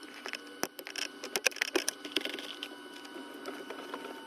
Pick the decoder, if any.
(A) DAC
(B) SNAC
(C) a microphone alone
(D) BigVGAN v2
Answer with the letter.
C